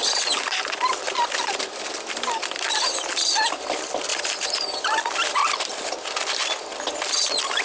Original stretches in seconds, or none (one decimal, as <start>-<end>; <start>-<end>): 3.6-4.1; 5.0-7.6